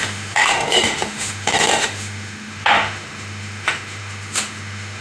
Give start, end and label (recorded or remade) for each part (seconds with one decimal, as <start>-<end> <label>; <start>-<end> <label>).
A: 0.0-5.0 remade